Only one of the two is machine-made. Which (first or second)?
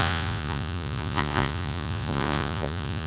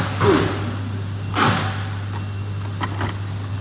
first